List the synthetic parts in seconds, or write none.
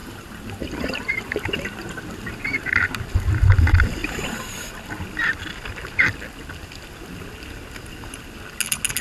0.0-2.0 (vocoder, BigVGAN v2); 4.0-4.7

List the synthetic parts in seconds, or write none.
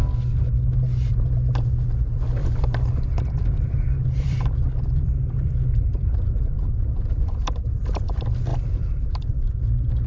2.4-6.1 (vocoder, BigVGAN v2); 8.5-9.6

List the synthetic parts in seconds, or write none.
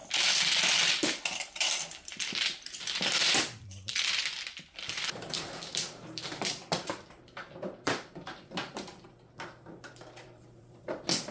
0.9-11.3 (vocoder, BigVGAN v2)